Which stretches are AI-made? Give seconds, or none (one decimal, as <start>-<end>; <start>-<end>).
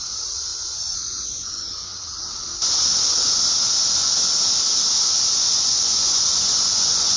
0.5-1.9; 5.4-7.2